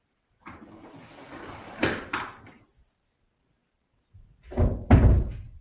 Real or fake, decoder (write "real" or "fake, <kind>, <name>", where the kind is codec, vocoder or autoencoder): real